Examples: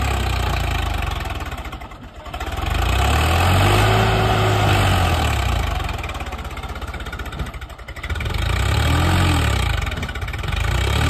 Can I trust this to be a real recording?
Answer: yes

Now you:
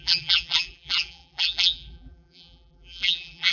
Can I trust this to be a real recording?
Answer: no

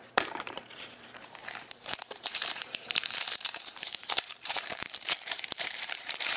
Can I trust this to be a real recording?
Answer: no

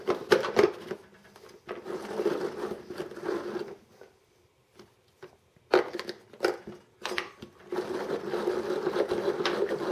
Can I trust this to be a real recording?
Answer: yes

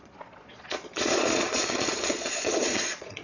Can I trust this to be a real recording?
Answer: no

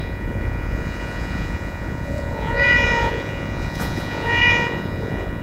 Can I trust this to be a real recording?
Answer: no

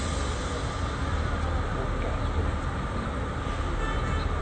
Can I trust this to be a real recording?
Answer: yes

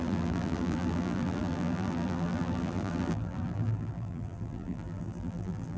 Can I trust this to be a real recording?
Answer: no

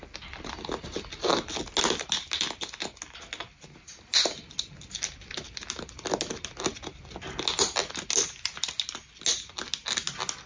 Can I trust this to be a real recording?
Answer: yes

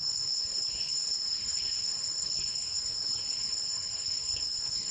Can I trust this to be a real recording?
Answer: no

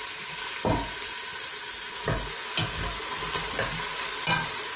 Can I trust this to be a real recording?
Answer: yes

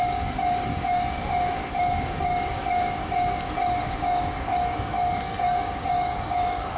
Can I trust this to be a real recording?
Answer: no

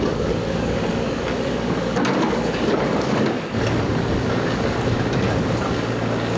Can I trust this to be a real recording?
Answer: no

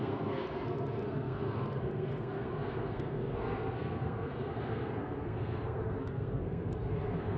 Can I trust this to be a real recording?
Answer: no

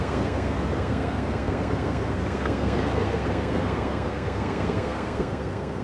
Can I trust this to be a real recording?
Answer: no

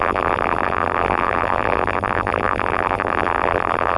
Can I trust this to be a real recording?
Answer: no